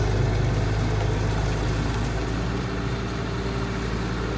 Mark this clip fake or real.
real